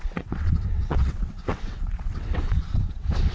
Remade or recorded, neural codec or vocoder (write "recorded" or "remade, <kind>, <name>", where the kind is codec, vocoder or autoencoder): remade, vocoder, WaveNeXt